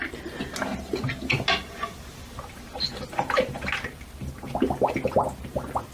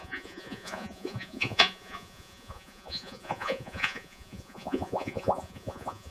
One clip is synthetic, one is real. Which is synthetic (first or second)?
second